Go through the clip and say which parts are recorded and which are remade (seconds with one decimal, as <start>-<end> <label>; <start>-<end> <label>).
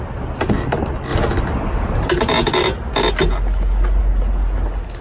0.0-5.0 recorded